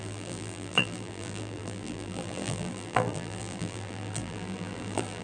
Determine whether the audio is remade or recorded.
remade